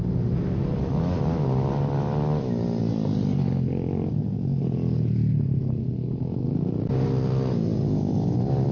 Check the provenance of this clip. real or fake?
real